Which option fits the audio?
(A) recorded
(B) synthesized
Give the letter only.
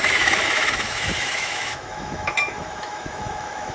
B